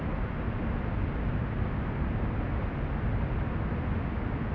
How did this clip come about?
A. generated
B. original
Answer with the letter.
B